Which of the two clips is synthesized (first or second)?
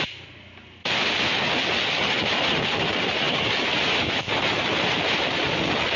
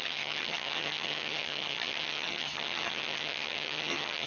second